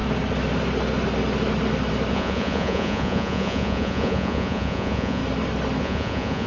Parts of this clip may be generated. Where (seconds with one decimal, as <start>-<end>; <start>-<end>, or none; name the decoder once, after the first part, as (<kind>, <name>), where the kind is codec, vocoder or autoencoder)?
2.1-5.2 (vocoder, Vocos); 5.8-6.5